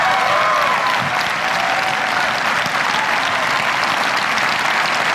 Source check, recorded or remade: recorded